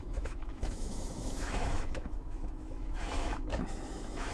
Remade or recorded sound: remade